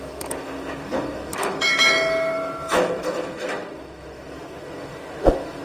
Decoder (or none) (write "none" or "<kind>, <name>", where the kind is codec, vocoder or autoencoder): autoencoder, DAC-VAE